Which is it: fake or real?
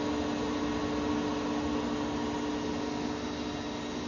real